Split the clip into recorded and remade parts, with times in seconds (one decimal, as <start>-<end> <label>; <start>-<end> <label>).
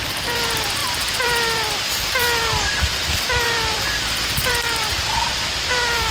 0.0-6.1 remade